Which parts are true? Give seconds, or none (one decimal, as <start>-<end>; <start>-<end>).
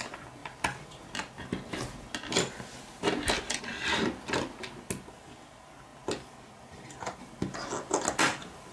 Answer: 0.0-8.7